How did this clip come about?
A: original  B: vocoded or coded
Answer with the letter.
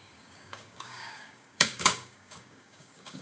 B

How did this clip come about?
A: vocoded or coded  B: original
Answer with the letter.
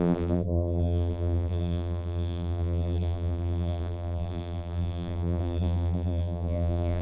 A